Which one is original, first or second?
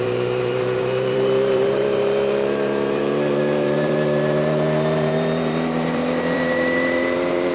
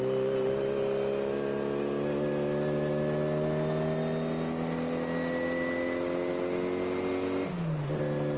second